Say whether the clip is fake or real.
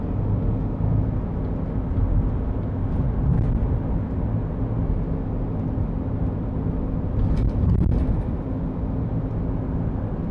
real